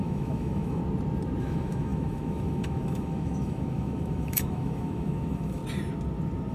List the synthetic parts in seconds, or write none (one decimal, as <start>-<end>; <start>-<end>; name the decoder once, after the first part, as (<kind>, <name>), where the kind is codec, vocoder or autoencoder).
0.0-0.8 (autoencoder, DAC-VAE); 1.4-5.6